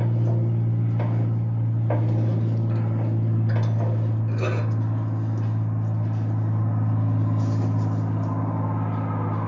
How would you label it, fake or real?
real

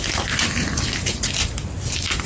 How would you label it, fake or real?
real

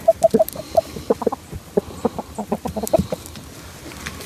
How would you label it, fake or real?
fake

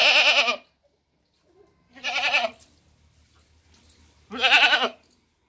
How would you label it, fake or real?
real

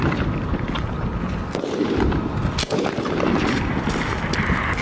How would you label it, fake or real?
real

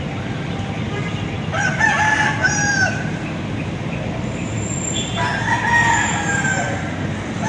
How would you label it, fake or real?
real